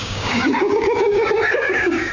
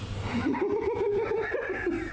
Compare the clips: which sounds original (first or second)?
second